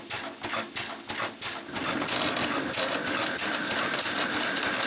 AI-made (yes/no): no